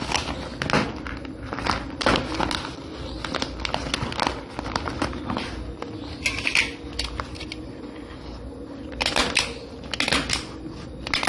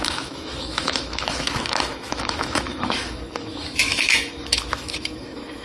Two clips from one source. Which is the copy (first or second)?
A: second